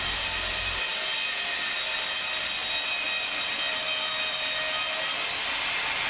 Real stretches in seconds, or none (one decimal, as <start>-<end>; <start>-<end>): 0.0-6.1